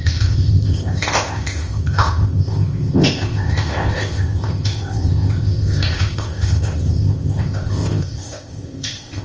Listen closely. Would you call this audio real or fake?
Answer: fake